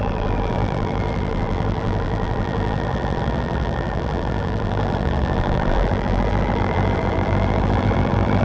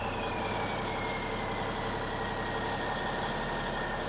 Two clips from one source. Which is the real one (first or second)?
second